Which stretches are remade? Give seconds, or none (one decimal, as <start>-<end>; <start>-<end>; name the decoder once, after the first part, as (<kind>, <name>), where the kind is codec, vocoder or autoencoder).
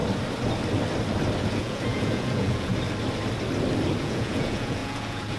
1.4-2.7 (vocoder, Vocos); 4.0-5.4